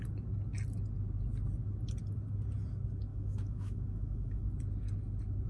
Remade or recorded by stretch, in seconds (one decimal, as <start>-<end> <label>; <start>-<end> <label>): 0.0-3.1 recorded; 3.1-4.5 remade; 4.5-5.5 recorded